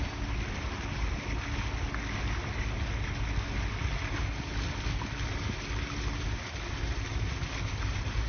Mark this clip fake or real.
real